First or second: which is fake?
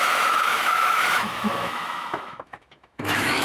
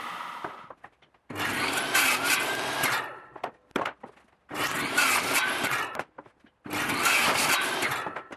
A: first